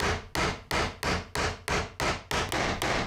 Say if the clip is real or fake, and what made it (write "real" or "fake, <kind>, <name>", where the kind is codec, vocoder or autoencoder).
real